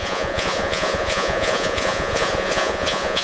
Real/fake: fake